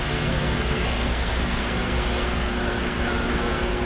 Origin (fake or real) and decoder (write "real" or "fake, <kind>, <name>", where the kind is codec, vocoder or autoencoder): fake, codec, SNAC